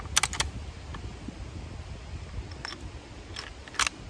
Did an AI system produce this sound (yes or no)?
no